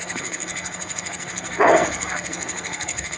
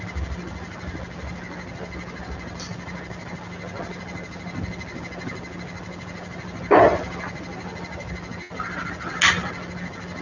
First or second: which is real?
second